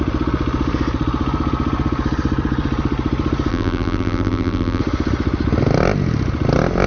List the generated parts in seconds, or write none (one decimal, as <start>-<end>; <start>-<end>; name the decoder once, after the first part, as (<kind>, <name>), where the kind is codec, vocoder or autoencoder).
3.5-4.8 (vocoder, BigVGAN v2)